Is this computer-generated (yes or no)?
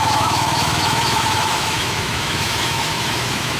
yes